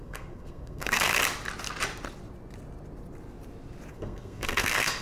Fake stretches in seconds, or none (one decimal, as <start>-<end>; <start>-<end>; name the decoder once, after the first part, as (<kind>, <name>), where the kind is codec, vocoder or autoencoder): 0.0-1.1 (codec, SNAC); 3.9-5.0